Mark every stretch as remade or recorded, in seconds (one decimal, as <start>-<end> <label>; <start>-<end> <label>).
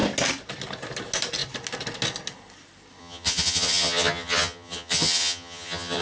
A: 0.0-3.0 recorded; 3.0-6.0 remade